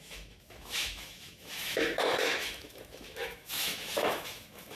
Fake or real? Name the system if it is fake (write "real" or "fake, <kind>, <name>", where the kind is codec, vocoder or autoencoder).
fake, autoencoder, DAC-VAE